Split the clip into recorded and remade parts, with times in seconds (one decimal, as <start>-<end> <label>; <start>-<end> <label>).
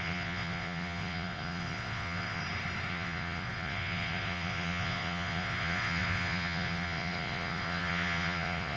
0.0-2.4 remade; 2.4-2.9 recorded; 2.9-8.8 remade